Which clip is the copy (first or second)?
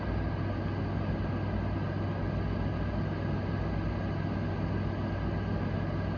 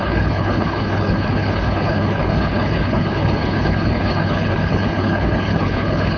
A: second